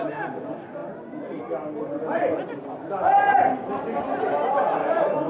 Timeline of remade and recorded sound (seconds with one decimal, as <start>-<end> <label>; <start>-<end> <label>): 0.0-4.8 recorded; 4.8-5.3 remade